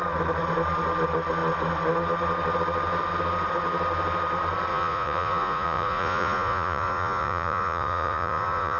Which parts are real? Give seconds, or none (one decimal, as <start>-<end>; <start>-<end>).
0.0-4.7